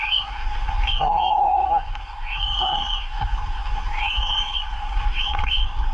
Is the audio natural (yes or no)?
no